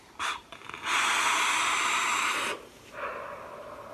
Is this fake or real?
real